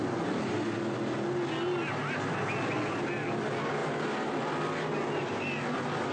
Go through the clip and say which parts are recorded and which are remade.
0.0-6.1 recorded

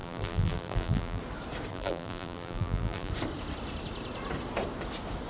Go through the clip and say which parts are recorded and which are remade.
0.0-1.2 remade; 1.2-1.7 recorded; 1.7-3.1 remade; 3.1-5.3 recorded

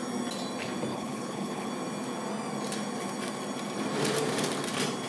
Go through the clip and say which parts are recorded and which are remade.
0.0-0.9 recorded; 0.9-1.7 remade; 1.7-5.1 recorded